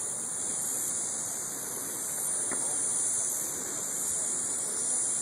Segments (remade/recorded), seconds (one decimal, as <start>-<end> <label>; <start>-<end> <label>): 0.0-5.2 remade